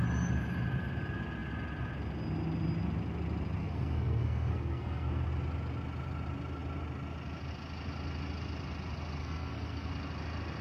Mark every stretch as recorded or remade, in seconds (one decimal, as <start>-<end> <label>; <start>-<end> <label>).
0.0-3.6 recorded; 3.6-5.3 remade; 5.3-9.2 recorded; 9.2-9.9 remade; 9.9-10.6 recorded